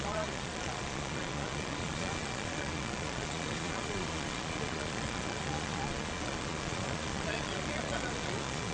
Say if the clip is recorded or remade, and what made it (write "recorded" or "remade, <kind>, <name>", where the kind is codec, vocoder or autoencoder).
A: remade, vocoder, Vocos